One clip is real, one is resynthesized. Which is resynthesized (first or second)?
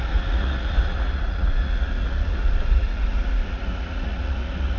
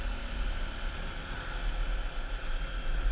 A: first